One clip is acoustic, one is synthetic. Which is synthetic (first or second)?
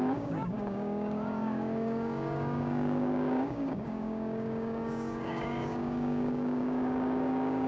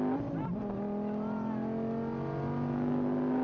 first